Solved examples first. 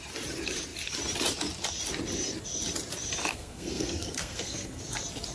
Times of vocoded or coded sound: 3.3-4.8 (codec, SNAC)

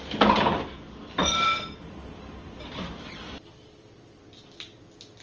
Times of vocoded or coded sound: 1.2-4.3 (vocoder, BigVGAN v2)

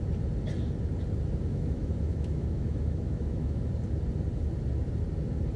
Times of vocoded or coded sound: 1.5-3.7 (autoencoder, DAC-VAE)

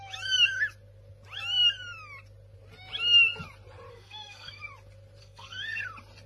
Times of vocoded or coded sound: 3.9-4.6 (codec, SNAC); 5.2-5.8

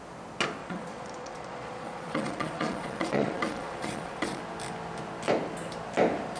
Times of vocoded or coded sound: 0.6-4.4 (vocoder, Vocos)